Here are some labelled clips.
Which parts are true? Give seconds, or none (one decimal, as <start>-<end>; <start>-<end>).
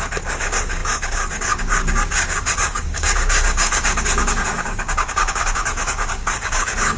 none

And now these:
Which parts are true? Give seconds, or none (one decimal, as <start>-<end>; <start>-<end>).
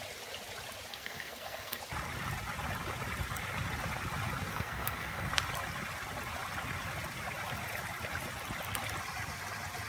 0.0-0.9; 1.8-4.5; 5.3-9.9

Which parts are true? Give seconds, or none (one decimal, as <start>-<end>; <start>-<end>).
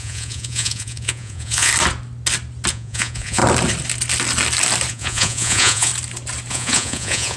1.7-2.7; 3.4-4.9; 5.9-6.5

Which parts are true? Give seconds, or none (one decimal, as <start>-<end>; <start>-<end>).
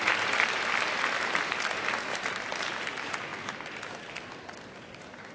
0.0-5.3